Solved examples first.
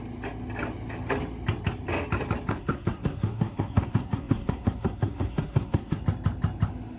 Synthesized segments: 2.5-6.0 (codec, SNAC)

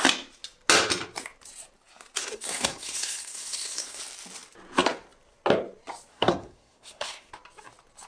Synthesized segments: 2.2-4.0 (codec, SNAC); 6.1-7.3

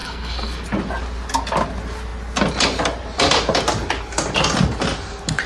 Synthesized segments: 0.0-0.6 (codec, SNAC)

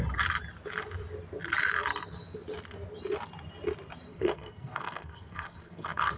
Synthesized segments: 4.1-6.2 (codec, SNAC)

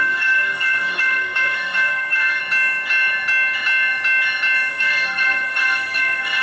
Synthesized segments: 0.0-2.4 (codec, SNAC); 4.7-6.4

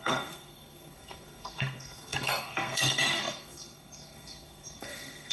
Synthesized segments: 0.0-5.3 (codec, SNAC)

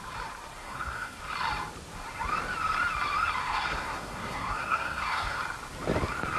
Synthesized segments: 0.6-1.2 (codec, SNAC); 3.4-5.4

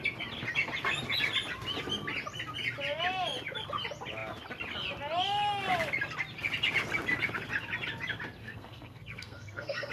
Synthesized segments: 8.4-9.9 (codec, SNAC)